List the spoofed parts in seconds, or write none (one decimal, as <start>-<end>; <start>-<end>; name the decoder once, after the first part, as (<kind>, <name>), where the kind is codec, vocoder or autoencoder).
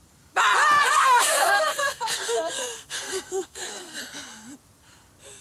0.8-4.0 (codec, SNAC)